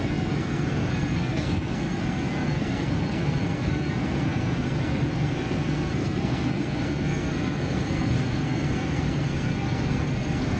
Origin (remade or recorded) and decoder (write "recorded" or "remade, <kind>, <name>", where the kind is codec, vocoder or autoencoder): remade, codec, SNAC